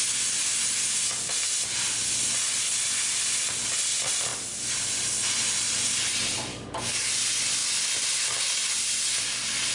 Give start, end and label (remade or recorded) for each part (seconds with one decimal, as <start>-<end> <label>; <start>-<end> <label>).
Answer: 0.0-6.5 recorded; 6.5-7.1 remade; 7.1-9.7 recorded